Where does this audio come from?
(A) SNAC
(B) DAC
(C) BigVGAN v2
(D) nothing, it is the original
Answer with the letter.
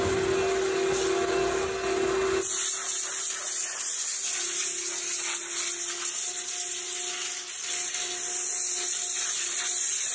D